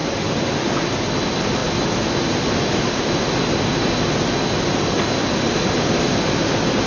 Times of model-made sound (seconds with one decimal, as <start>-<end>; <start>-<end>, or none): none